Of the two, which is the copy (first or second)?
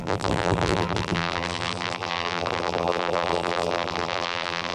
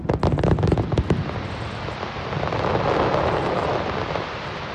first